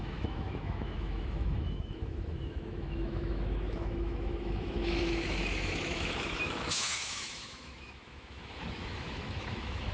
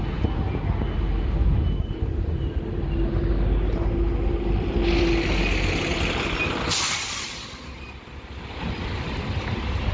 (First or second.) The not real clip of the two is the first